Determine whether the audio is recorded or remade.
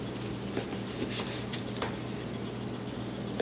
recorded